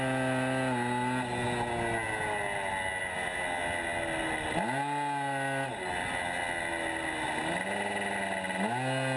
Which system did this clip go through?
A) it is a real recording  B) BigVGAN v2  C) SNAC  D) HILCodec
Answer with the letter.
A